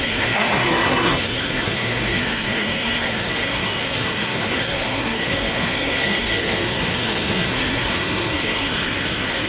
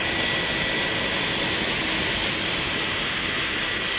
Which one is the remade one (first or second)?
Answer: first